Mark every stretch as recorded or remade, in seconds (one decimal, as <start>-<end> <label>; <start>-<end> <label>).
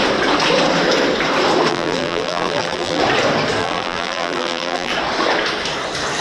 0.0-1.7 recorded; 1.7-3.0 remade; 3.0-3.6 recorded; 3.6-4.9 remade; 4.9-6.2 recorded